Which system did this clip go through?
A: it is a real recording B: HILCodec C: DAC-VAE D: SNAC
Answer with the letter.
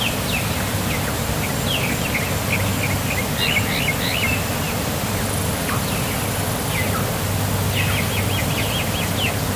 A